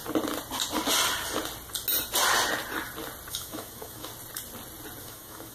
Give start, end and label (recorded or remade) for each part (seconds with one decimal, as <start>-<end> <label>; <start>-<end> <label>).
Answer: 0.0-3.3 recorded; 3.3-4.1 remade; 4.1-5.0 recorded; 5.0-5.5 remade